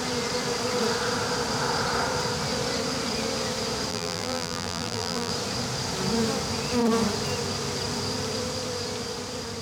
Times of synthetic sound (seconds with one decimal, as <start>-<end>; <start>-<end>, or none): 3.9-5.3